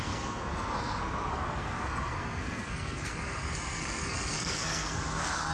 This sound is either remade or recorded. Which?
remade